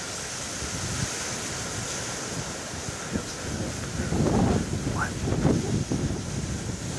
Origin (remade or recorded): recorded